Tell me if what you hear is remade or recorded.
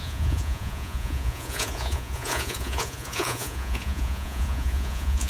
remade